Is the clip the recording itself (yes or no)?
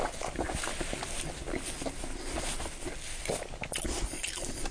yes